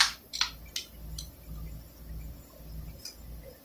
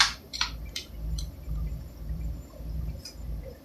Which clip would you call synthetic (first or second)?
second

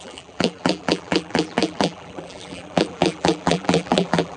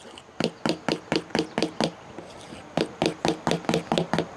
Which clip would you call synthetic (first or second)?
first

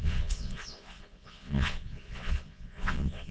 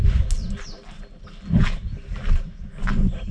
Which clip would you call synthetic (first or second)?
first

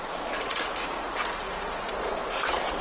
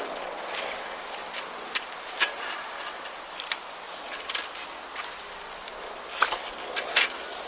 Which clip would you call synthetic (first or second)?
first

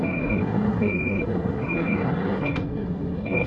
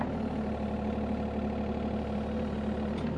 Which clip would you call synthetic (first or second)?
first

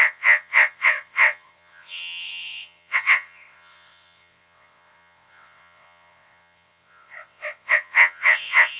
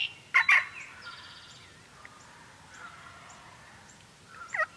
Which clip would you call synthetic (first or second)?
first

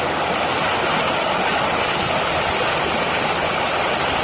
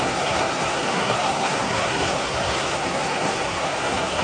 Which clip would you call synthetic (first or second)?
second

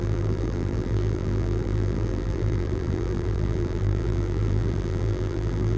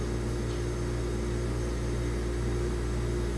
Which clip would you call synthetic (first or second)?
first